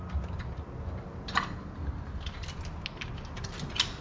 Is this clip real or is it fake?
real